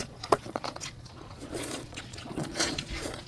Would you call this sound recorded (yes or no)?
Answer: no